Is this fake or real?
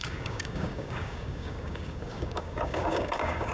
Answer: fake